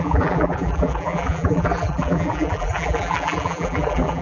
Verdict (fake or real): fake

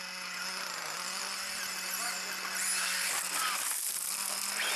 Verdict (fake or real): real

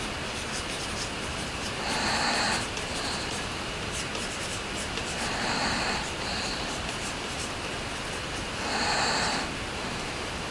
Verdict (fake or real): fake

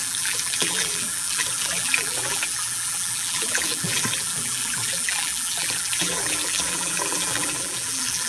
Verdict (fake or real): fake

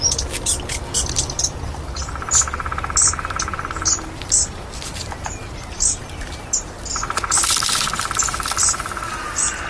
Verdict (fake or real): real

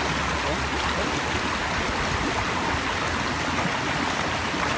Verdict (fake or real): real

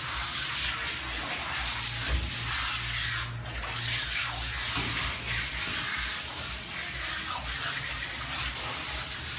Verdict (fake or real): real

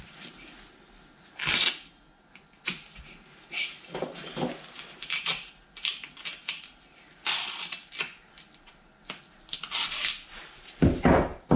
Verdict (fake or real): real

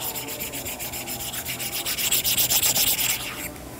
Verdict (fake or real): real